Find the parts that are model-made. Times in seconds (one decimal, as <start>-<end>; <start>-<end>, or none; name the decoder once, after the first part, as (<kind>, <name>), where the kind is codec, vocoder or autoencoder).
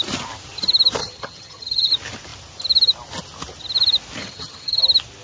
1.0-1.9 (vocoder, HiFi-GAN); 4.2-4.8